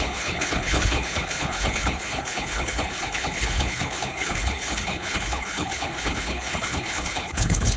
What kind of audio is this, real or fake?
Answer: fake